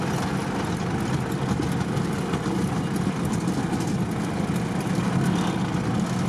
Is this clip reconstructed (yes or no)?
no